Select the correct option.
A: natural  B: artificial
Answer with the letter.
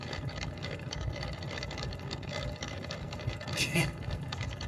B